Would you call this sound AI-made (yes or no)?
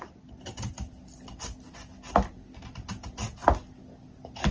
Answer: no